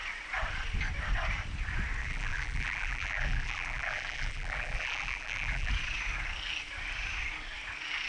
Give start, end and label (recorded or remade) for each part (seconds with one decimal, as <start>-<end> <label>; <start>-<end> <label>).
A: 0.0-2.0 recorded; 2.0-5.7 remade; 5.7-8.1 recorded